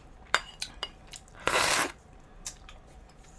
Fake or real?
fake